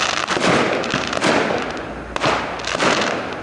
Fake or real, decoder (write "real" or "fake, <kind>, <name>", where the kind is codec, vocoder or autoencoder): real